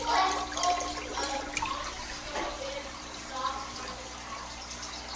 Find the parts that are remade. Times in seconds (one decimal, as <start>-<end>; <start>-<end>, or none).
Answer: 1.1-3.5